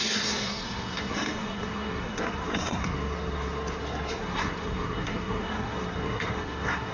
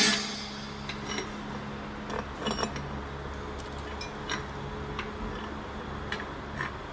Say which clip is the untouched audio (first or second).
second